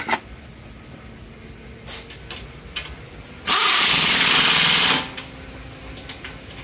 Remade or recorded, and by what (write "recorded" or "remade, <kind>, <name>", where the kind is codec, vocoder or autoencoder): recorded